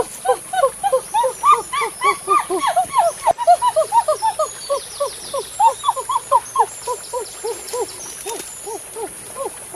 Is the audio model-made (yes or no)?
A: no